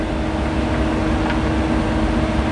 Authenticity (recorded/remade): recorded